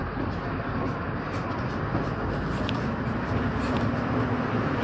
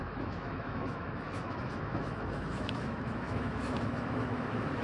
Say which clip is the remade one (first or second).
second